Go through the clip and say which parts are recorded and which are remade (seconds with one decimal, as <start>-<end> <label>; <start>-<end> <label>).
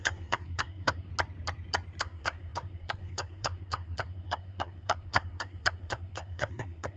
0.0-1.1 remade; 1.1-2.0 recorded; 2.0-7.0 remade